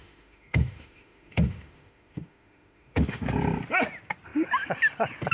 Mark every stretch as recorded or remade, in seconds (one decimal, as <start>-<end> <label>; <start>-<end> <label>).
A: 0.0-3.2 remade; 3.2-5.3 recorded